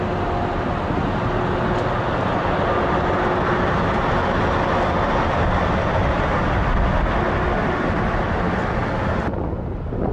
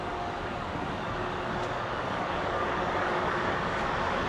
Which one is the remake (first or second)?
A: second